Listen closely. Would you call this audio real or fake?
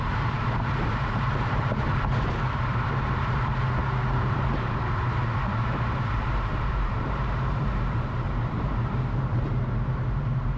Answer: fake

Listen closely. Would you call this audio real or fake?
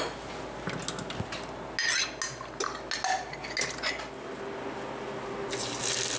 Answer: real